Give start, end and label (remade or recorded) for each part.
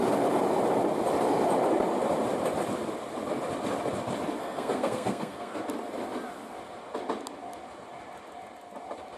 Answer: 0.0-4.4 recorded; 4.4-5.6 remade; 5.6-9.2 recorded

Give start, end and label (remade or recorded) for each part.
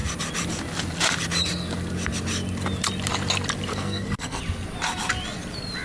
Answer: 0.0-3.7 recorded; 3.7-4.4 remade; 4.4-5.8 recorded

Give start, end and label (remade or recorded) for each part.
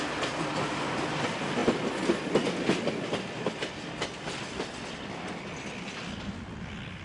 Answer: 0.0-7.0 recorded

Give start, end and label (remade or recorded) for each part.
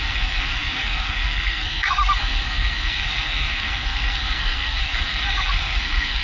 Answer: 0.0-6.2 remade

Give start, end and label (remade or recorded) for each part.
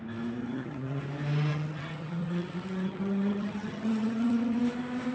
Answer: 0.0-0.4 recorded; 0.4-1.0 remade; 1.0-1.5 recorded; 1.5-4.6 remade; 4.6-5.1 recorded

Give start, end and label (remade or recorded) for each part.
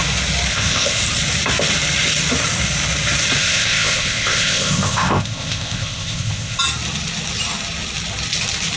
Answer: 0.0-0.5 recorded; 0.5-1.0 remade; 1.0-3.4 recorded; 3.4-6.6 remade; 6.6-8.8 recorded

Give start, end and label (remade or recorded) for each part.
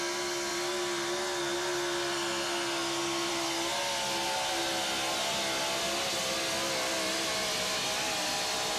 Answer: 0.0-8.8 recorded